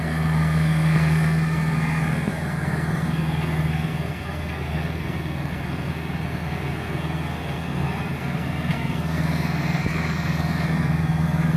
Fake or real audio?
fake